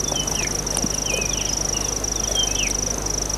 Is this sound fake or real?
real